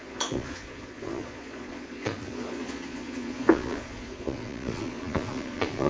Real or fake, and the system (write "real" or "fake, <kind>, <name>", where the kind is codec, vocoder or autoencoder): fake, vocoder, Vocos